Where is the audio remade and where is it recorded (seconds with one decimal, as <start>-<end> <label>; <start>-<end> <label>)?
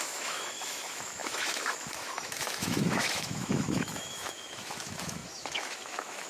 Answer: 0.0-6.3 remade